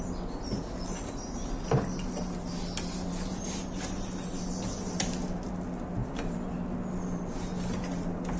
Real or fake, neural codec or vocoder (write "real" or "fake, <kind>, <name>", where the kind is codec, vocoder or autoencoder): real